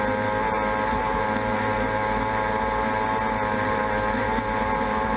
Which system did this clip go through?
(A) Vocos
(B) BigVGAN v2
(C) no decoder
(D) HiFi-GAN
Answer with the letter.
C